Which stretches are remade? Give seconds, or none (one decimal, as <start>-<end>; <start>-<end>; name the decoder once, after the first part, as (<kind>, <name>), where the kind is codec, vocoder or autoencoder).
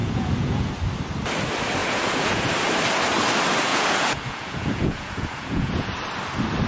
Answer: 0.0-0.7 (vocoder, Vocos); 1.8-2.5; 3.7-5.9